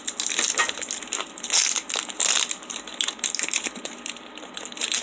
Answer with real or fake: real